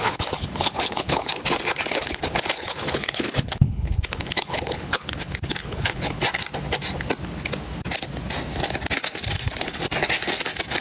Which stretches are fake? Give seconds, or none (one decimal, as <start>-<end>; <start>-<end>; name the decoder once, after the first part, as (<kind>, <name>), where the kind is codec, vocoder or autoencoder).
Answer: 0.0-1.3 (codec, HILCodec); 1.9-6.2